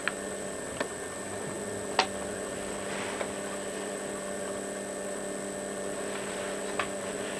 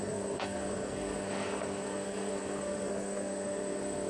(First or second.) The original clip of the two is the first